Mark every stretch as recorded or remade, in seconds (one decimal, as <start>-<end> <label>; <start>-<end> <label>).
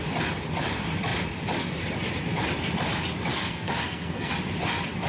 0.0-3.3 recorded; 3.3-4.3 remade; 4.3-5.1 recorded